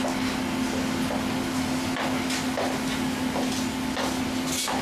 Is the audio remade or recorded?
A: recorded